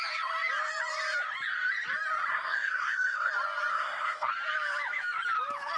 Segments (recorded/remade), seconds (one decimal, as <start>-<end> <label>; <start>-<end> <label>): 0.0-2.3 recorded; 2.3-3.3 remade; 3.3-3.7 recorded; 3.7-4.3 remade; 4.3-5.8 recorded